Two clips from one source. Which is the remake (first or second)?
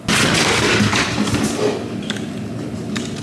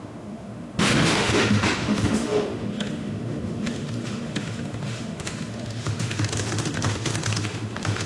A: second